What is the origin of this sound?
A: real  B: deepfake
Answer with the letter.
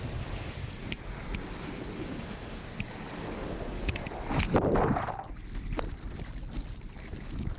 A